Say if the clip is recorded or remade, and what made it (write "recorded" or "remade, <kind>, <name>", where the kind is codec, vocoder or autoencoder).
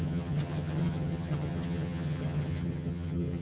remade, vocoder, HiFi-GAN